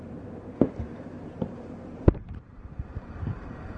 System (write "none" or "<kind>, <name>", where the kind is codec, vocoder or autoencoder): vocoder, BigVGAN v2